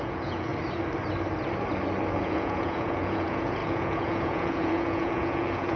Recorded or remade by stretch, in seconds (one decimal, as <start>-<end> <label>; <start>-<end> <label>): 0.0-0.5 remade; 0.5-2.1 recorded; 2.1-5.8 remade